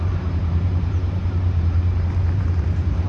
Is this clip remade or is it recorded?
remade